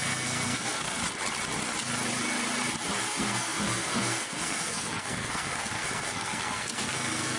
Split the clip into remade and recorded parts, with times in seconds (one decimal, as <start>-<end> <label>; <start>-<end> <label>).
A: 0.0-1.0 remade; 1.0-3.0 recorded; 3.0-7.4 remade